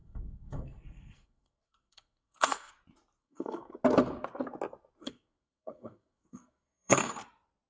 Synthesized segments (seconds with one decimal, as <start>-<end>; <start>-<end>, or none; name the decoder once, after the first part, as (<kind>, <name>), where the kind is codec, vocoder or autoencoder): 0.0-2.7 (codec, SNAC); 3.2-3.7; 5.0-7.1